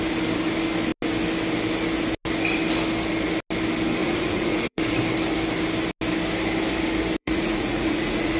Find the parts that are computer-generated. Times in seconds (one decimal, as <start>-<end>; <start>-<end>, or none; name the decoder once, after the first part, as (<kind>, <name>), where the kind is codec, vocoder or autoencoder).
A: 4.0-4.8 (vocoder, Vocos); 7.2-8.4